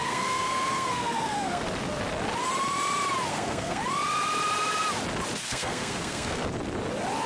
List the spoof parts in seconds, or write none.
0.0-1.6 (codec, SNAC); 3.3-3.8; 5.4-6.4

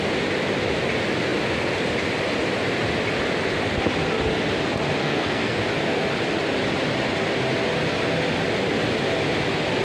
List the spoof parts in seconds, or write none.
5.0-5.6 (codec, SNAC)